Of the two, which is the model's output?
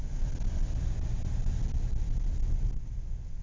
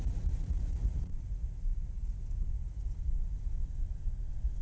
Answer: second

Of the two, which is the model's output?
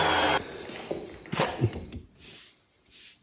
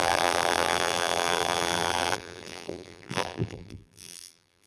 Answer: second